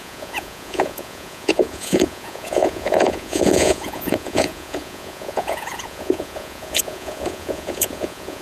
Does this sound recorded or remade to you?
remade